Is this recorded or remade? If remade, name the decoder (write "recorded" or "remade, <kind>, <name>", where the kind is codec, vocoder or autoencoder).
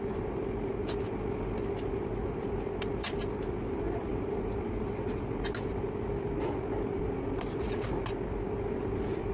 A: recorded